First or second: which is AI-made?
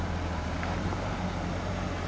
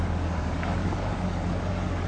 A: second